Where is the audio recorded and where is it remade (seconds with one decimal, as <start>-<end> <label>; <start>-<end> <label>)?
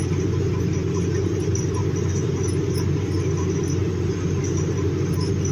0.0-5.5 recorded